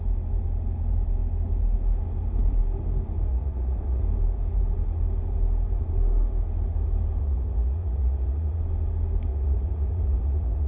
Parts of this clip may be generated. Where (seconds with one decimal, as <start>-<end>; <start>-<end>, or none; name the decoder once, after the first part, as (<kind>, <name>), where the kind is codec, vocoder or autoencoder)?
3.3-4.0 (vocoder, Vocos); 7.2-8.6; 9.3-10.7